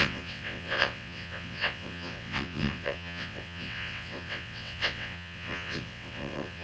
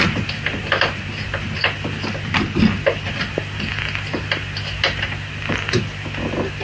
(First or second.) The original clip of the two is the second